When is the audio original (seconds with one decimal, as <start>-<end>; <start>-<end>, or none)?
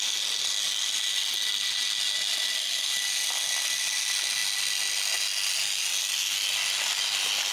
0.0-7.5